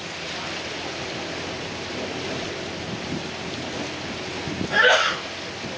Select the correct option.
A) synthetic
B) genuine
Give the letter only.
B